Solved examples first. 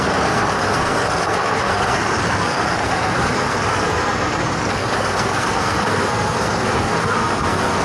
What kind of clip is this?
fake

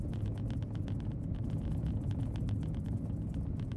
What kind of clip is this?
real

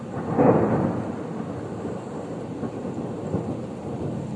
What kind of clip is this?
real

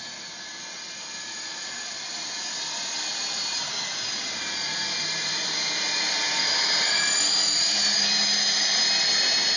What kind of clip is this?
real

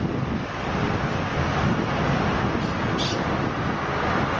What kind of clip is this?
real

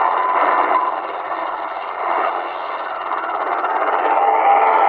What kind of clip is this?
real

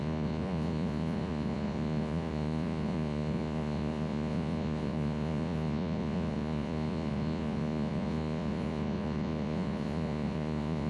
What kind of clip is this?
fake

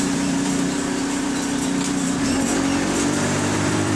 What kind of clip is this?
fake